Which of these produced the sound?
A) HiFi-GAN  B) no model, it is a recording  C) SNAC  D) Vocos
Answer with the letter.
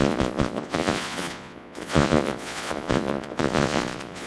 D